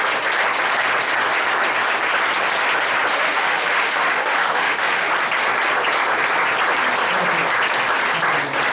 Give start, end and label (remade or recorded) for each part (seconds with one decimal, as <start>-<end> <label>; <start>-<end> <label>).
0.0-3.1 recorded; 3.1-5.1 remade; 5.1-8.7 recorded